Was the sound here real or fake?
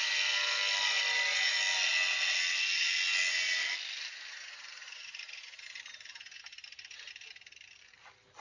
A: real